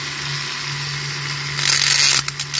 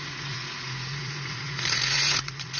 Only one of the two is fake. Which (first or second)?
second